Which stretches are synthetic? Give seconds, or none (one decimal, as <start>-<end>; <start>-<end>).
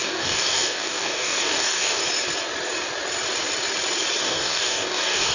0.0-2.0; 4.2-5.3